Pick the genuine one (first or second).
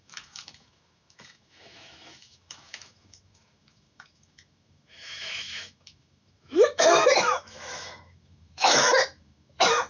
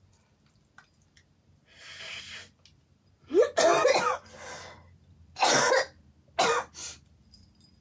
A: second